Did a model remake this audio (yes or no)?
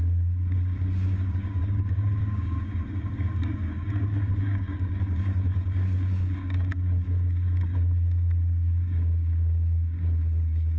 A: yes